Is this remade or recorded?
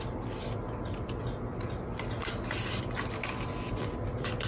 recorded